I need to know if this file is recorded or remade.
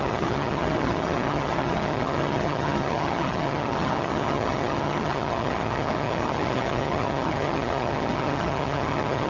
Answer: remade